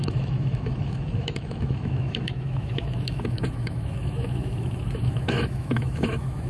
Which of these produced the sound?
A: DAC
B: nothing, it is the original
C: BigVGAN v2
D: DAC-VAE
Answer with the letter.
D